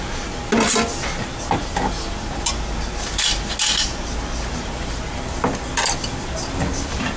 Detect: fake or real real